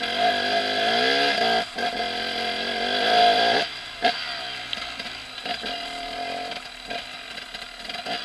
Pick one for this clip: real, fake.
real